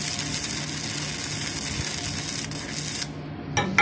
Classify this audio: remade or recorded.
recorded